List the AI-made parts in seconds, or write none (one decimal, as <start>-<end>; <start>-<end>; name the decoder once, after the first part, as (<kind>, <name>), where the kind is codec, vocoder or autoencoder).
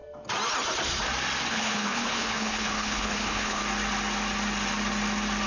1.5-3.6 (codec, HILCodec)